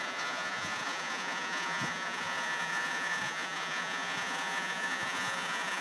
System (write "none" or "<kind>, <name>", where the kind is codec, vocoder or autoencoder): vocoder, Vocos